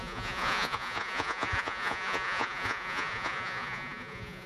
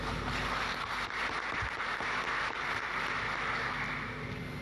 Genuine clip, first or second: second